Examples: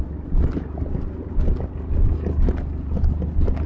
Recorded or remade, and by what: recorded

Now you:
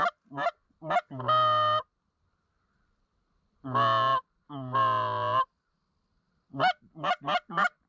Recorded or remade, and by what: recorded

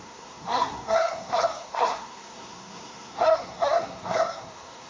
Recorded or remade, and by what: remade, codec, SNAC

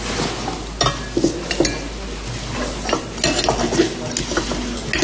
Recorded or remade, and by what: recorded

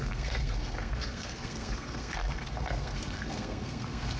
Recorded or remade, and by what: remade, codec, SNAC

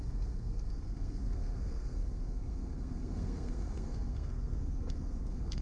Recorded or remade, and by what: remade, codec, SNAC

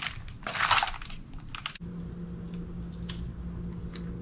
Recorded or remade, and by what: recorded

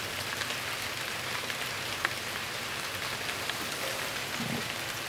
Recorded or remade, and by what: recorded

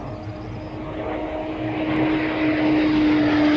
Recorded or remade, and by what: recorded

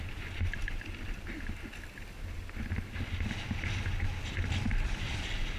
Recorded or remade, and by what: recorded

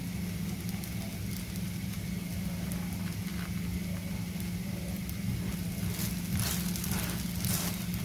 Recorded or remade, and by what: recorded